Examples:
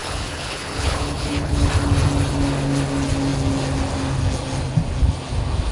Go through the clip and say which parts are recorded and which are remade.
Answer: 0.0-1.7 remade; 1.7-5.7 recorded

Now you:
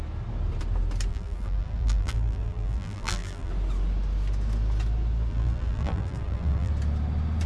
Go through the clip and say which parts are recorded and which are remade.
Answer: 0.0-1.1 recorded; 1.1-3.5 remade; 3.5-5.3 recorded; 5.3-6.7 remade; 6.7-7.5 recorded

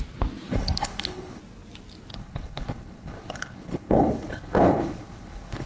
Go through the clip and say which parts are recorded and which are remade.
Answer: 0.0-0.5 recorded; 0.5-1.4 remade; 1.4-2.1 recorded; 2.1-5.7 remade